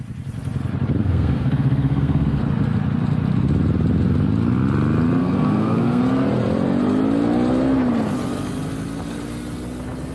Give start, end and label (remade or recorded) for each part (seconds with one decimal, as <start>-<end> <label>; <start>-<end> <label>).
0.0-1.0 recorded; 1.0-2.4 remade; 2.4-5.2 recorded; 5.2-6.0 remade; 6.0-10.1 recorded